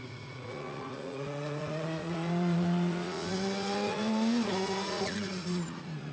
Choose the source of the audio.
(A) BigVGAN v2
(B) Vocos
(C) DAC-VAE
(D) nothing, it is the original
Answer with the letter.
B